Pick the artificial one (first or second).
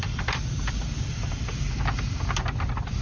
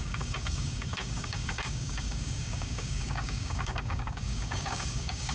second